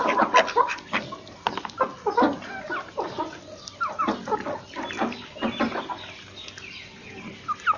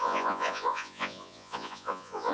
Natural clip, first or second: first